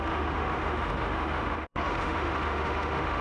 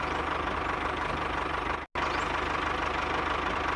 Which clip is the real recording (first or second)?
second